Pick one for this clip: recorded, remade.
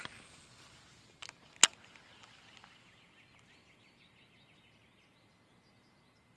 recorded